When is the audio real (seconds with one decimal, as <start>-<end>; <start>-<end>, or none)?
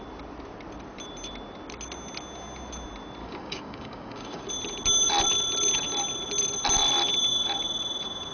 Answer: 0.0-3.2; 4.5-8.3